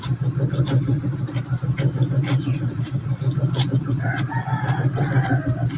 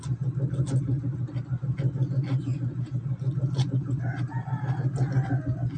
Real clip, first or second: second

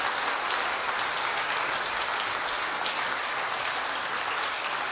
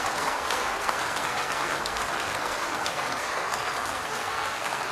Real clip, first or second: first